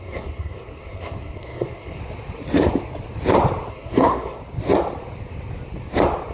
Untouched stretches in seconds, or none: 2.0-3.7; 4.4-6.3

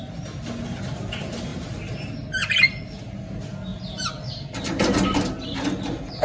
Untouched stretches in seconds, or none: 0.0-3.7; 5.2-6.2